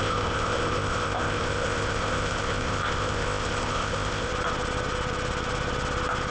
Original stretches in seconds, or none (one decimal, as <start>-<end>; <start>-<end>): 4.3-6.3